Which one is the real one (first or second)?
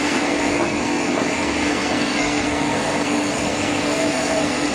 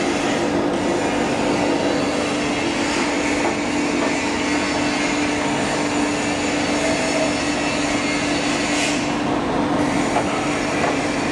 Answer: second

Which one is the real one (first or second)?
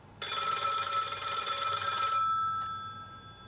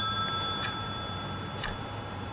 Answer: first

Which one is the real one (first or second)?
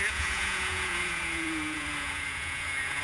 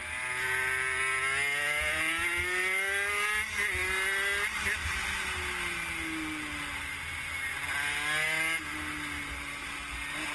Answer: second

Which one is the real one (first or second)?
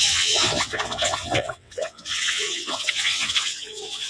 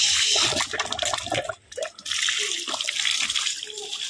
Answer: second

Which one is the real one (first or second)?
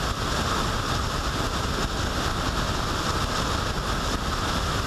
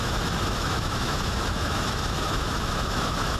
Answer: first